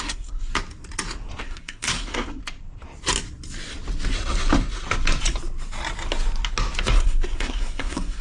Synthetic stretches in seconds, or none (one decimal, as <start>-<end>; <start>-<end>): 0.0-0.5; 1.4-2.4; 6.9-8.2